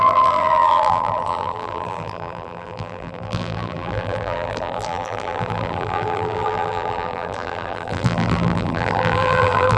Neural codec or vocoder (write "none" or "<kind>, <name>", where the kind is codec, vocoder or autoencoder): vocoder, BigVGAN v2